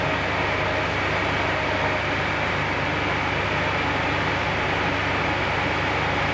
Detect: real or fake real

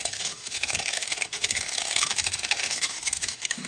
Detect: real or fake fake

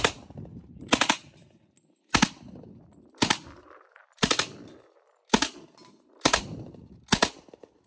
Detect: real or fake real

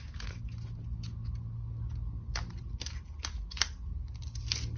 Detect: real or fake real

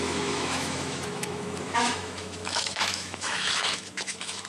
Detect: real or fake fake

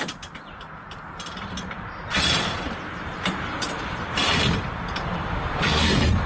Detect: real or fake real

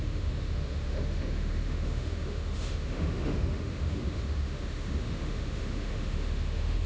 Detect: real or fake fake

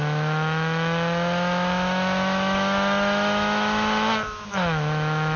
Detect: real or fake fake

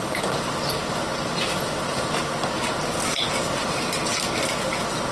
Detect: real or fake real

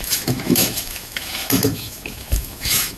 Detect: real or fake fake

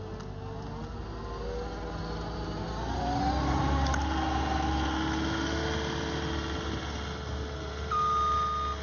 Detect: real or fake real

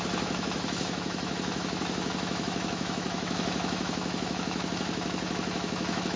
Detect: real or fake fake